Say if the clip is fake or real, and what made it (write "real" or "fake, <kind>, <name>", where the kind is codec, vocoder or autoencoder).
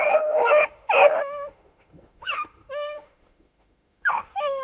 fake, autoencoder, DAC-VAE